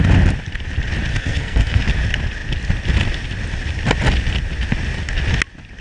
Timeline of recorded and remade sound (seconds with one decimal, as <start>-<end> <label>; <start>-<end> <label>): 0.0-1.1 recorded; 1.1-1.8 remade; 1.8-5.8 recorded